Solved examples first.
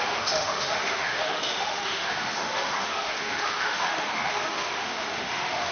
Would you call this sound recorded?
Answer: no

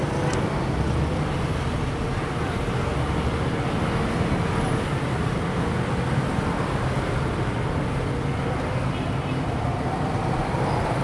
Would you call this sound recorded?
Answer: yes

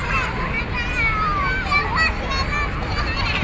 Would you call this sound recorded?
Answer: yes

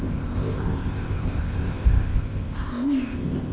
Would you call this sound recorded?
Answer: no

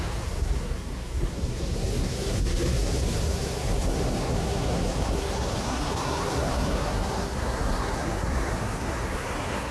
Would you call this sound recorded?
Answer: no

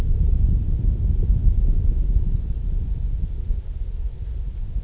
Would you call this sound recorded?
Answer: yes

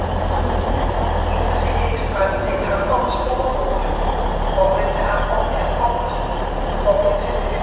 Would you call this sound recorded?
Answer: yes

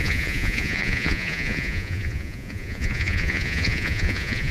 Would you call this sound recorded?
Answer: no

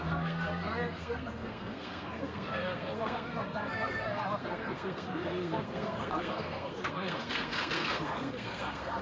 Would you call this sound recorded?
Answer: no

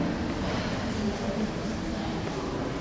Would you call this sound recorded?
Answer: yes